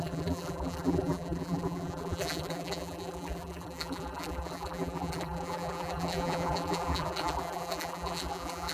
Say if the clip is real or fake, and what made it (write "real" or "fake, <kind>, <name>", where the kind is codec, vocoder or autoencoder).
fake, vocoder, BigVGAN v2